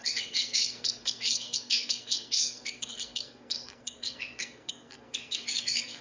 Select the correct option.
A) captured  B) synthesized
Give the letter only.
B